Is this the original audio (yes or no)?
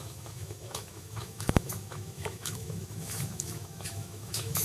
no